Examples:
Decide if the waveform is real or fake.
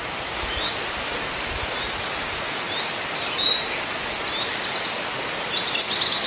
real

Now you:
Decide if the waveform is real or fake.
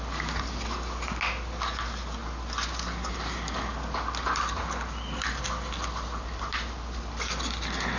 real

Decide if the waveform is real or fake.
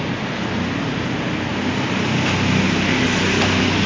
real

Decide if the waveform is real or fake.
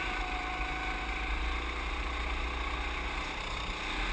real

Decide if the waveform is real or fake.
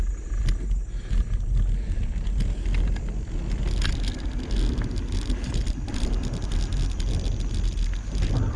real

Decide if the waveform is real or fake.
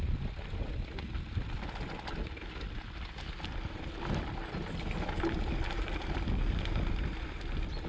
real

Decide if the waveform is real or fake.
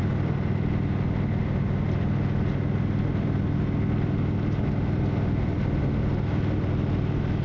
real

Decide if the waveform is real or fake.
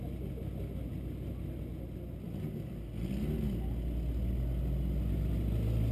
real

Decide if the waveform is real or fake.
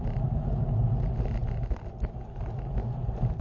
real